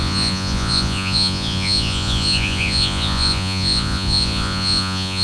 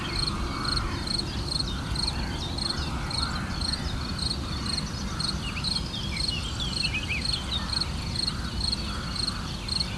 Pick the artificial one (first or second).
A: first